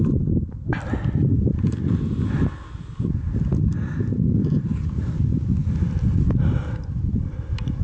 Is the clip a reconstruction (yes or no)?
no